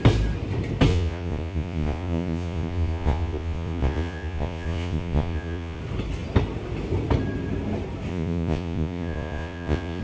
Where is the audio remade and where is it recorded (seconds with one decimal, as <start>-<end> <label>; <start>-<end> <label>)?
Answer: 0.0-0.9 recorded; 0.9-5.8 remade; 5.8-8.1 recorded; 8.1-10.0 remade